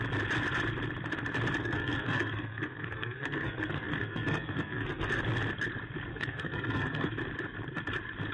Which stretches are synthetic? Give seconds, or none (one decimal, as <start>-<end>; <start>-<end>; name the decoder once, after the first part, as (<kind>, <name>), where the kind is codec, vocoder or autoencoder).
1.6-5.2 (codec, SNAC); 6.1-7.1